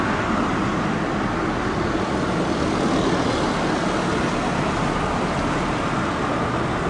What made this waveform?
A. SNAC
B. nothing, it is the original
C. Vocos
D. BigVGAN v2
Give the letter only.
B